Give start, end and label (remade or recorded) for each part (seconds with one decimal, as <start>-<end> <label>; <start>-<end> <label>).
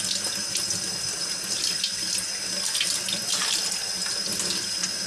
0.0-5.1 recorded